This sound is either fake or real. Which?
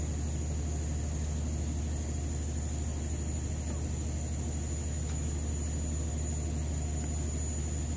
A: real